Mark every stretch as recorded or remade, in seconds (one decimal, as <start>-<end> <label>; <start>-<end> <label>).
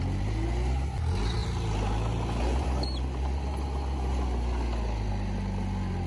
0.0-6.1 recorded